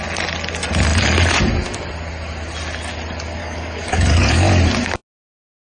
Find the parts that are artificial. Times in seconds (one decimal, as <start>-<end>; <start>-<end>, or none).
3.4-4.5